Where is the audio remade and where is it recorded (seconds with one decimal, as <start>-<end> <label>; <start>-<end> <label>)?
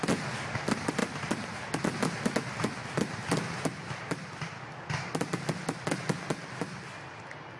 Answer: 0.0-7.6 recorded